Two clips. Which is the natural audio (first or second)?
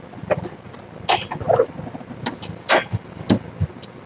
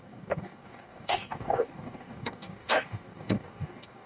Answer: first